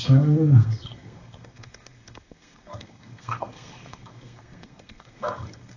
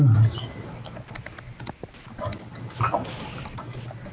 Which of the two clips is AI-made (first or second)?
first